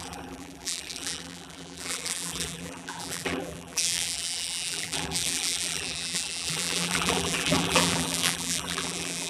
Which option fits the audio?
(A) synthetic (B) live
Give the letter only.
A